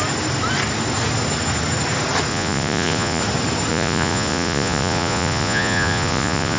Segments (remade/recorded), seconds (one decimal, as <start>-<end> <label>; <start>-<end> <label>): 0.0-2.3 recorded; 2.3-3.2 remade; 3.2-3.7 recorded; 3.7-6.6 remade